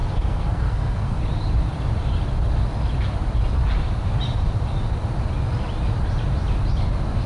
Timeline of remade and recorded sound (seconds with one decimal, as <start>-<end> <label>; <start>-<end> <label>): 0.0-1.2 remade; 1.2-7.3 recorded

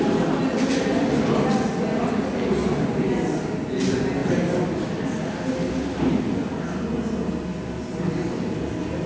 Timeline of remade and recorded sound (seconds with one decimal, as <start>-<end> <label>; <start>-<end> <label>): 0.0-9.1 recorded